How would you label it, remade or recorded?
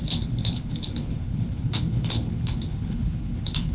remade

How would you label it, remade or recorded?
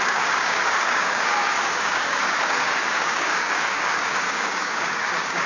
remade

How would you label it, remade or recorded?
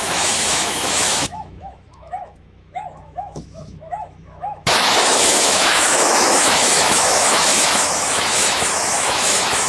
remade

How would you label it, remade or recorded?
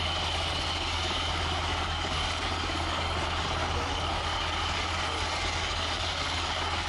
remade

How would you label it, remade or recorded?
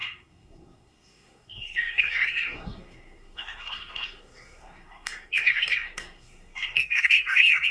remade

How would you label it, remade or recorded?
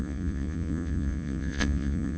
remade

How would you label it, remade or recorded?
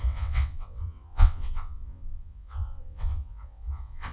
remade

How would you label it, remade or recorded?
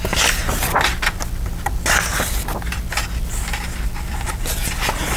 recorded